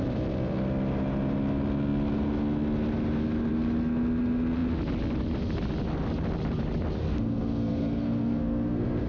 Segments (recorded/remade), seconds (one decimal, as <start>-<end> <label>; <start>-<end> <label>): 0.0-7.0 recorded; 7.0-9.1 remade